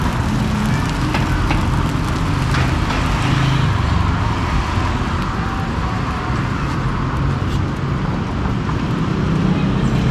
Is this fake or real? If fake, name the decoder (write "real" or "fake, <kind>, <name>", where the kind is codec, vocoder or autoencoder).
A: real